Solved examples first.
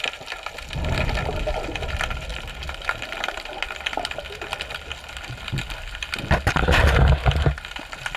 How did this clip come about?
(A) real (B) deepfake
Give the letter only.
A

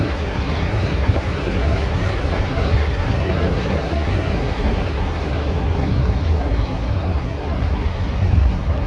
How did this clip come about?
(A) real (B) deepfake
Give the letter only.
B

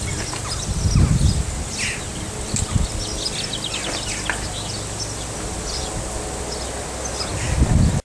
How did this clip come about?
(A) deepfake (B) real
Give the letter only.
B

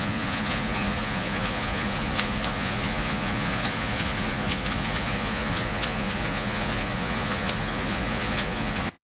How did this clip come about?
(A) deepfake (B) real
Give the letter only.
A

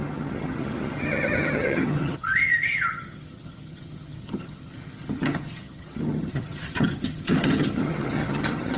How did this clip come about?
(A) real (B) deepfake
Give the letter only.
B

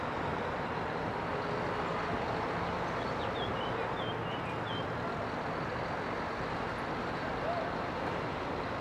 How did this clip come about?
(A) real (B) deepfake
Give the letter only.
A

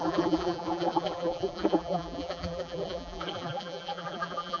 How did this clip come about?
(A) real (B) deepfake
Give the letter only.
B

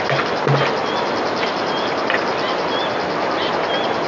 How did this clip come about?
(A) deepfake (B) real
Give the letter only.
B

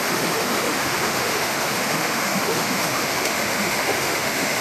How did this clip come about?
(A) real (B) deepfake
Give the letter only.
B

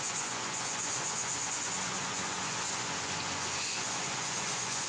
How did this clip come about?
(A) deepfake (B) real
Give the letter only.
A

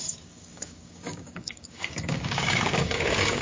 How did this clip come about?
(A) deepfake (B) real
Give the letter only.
A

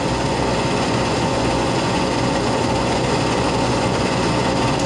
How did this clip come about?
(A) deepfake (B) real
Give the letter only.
A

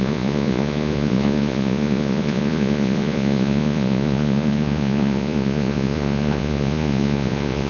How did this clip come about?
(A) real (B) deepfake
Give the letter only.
B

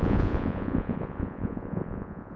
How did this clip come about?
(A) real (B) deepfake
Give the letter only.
B